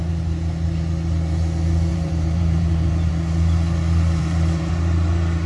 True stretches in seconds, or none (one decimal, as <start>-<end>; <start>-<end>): 0.0-1.9; 3.1-4.2; 4.7-5.5